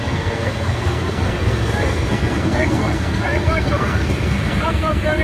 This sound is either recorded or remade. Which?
remade